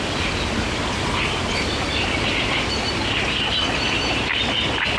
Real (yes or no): yes